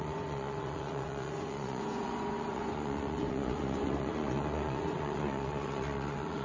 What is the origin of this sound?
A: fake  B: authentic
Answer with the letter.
A